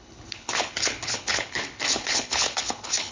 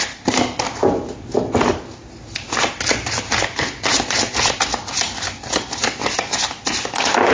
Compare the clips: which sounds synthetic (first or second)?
first